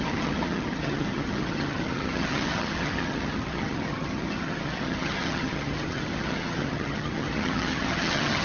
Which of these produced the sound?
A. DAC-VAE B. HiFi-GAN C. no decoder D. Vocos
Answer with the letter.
B